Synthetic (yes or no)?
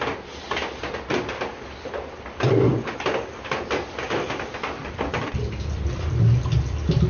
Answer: no